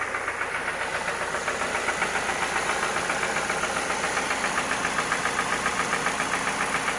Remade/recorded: recorded